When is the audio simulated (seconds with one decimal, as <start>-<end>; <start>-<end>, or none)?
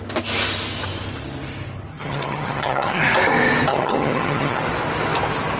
1.9-3.0; 3.7-4.6